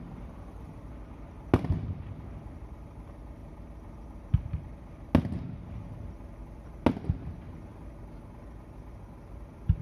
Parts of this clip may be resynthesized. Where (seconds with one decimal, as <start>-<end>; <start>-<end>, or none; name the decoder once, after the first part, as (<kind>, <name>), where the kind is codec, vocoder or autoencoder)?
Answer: none